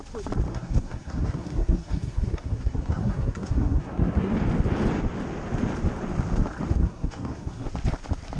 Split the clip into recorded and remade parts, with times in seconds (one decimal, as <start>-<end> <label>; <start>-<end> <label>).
0.0-0.5 recorded; 0.5-4.3 remade; 4.3-6.8 recorded; 6.8-7.7 remade; 7.7-8.4 recorded